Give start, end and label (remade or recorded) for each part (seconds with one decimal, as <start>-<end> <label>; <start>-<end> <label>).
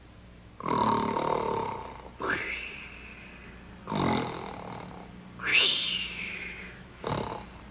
0.0-5.5 recorded; 5.5-7.1 remade; 7.1-7.7 recorded